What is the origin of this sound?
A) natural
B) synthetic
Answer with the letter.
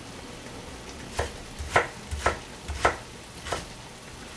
A